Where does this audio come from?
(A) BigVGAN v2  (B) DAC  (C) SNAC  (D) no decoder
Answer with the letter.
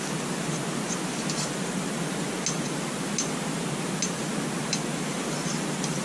D